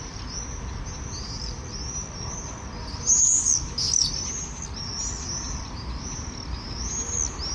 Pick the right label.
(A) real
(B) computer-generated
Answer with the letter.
A